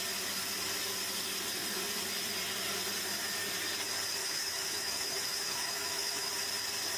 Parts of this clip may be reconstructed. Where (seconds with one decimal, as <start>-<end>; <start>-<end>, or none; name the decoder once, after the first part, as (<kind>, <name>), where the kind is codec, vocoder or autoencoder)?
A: 4.2-6.3 (autoencoder, DAC-VAE)